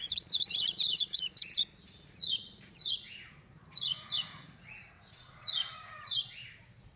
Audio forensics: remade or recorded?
remade